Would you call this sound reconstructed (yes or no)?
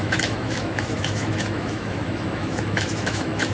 yes